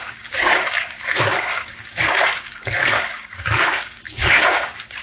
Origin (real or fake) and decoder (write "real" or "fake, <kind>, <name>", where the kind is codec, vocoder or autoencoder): fake, codec, DAC